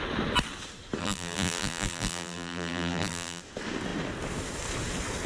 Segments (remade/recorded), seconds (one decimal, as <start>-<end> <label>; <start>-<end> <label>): 0.0-1.0 recorded; 1.0-3.4 remade; 3.4-5.3 recorded